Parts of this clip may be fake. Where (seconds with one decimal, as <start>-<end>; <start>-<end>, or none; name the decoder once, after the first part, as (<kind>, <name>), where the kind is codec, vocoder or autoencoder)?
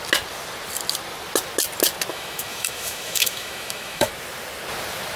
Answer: 2.1-4.1 (autoencoder, DAC-VAE)